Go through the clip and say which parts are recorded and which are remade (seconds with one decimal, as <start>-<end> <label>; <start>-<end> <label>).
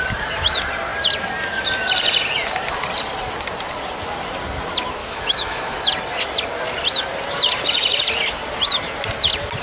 0.0-5.0 recorded; 5.0-5.9 remade; 5.9-9.6 recorded